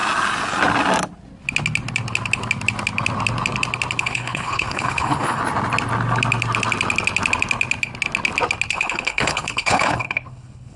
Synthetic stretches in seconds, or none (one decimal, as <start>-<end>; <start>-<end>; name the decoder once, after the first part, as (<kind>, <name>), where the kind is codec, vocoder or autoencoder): 4.0-5.4 (codec, HILCodec); 8.7-10.8